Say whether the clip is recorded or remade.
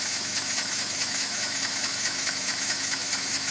remade